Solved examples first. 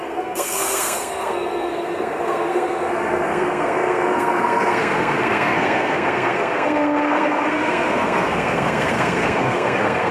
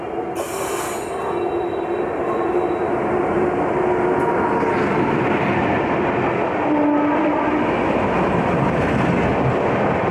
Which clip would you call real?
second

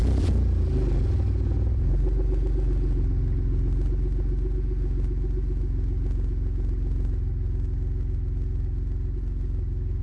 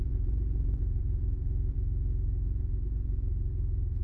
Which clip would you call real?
first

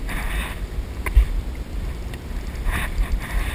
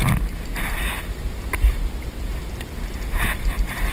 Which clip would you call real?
second